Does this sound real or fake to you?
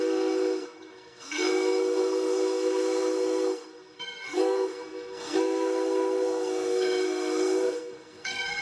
fake